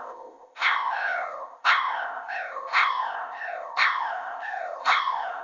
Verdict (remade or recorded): remade